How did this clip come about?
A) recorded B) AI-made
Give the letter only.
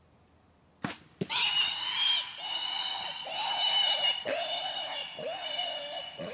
A